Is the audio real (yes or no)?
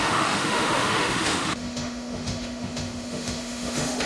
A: no